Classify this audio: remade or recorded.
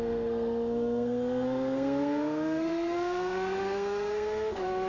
remade